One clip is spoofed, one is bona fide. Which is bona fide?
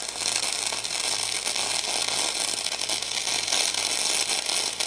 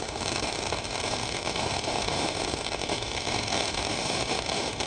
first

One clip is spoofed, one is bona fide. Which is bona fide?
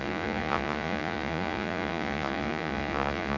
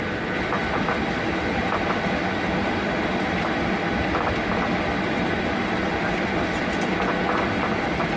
second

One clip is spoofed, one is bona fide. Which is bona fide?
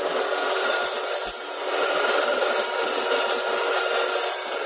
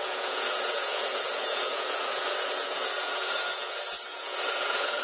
first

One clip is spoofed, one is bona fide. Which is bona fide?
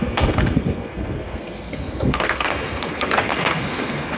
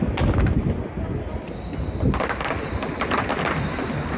second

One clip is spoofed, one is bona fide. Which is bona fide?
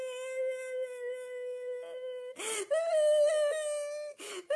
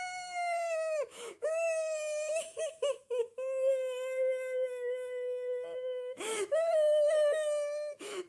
first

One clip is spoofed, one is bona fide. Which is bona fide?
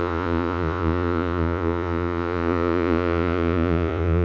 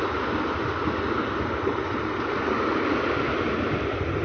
second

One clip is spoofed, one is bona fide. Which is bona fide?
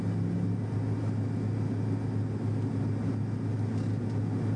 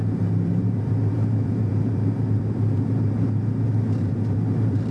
first